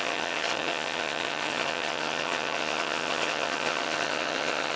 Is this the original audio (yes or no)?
no